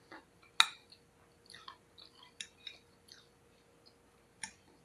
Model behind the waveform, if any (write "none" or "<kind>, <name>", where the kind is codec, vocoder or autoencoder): none